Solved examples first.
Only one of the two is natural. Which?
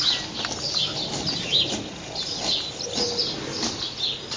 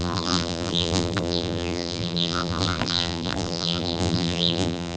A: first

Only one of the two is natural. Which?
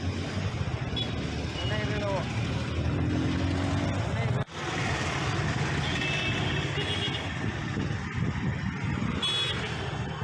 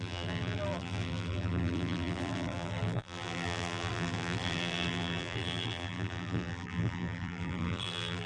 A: first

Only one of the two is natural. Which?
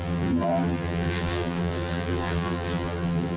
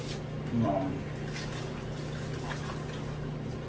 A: second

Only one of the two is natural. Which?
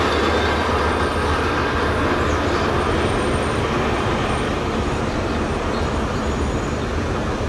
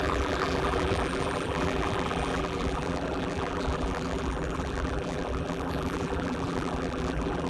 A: first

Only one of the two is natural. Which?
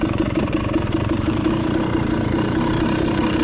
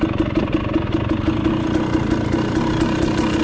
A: second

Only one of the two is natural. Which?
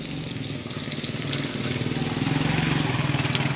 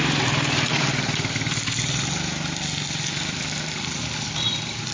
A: first